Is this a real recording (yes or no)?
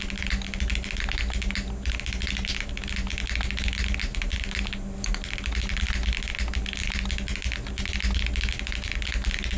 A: yes